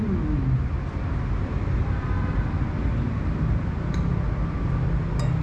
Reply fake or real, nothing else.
real